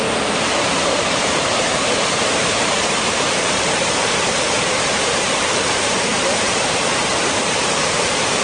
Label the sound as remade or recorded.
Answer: remade